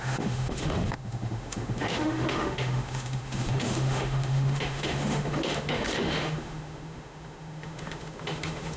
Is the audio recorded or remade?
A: remade